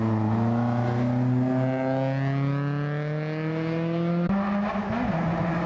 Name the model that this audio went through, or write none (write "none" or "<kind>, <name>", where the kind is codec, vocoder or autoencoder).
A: none